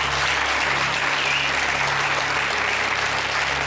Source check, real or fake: real